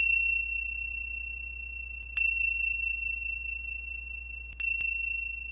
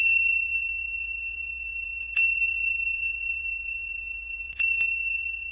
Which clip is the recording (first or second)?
first